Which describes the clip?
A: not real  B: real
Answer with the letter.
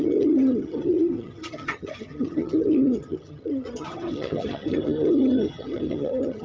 A